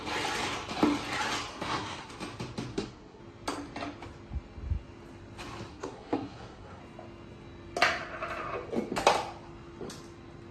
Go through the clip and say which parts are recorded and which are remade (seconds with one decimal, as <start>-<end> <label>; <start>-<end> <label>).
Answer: 0.0-1.5 recorded; 1.5-2.1 remade; 2.1-2.7 recorded; 2.7-3.2 remade; 3.2-5.7 recorded; 5.7-6.8 remade; 6.8-10.5 recorded